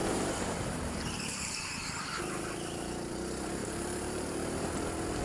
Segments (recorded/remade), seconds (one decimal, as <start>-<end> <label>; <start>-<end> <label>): 0.0-2.2 remade; 2.2-3.6 recorded; 3.6-4.7 remade; 4.7-5.2 recorded